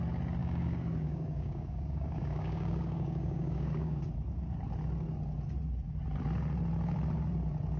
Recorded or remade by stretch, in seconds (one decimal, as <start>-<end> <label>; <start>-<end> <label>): 0.0-0.4 recorded; 0.4-4.0 remade; 4.0-7.8 recorded